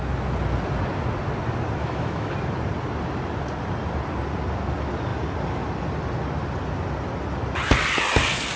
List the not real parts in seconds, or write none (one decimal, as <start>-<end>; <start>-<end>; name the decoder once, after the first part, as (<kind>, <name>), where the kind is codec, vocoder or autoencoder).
1.8-2.3 (autoencoder, DAC-VAE)